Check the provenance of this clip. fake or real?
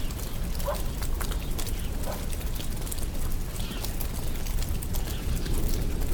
real